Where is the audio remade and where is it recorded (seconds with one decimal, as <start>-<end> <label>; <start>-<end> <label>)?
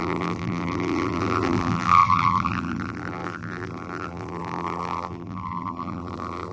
0.0-6.5 remade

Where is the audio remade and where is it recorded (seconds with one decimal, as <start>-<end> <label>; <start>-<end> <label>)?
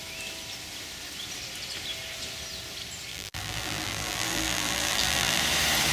0.0-3.1 recorded; 3.1-5.4 remade; 5.4-5.9 recorded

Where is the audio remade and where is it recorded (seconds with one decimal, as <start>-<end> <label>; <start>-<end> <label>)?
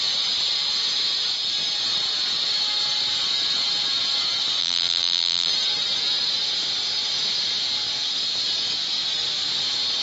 0.0-4.6 recorded; 4.6-5.5 remade; 5.5-10.0 recorded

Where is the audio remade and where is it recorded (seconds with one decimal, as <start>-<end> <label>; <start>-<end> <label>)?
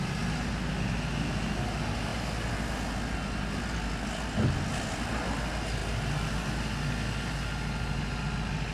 0.0-8.7 recorded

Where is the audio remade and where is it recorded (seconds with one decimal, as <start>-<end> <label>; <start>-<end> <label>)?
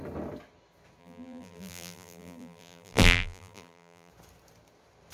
0.0-1.0 recorded; 1.0-4.1 remade; 4.1-5.1 recorded